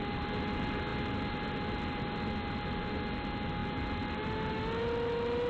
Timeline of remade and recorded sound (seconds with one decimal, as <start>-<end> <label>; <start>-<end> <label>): 0.0-5.5 recorded